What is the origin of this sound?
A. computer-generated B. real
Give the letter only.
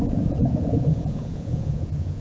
A